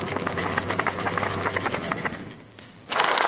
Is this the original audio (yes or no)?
no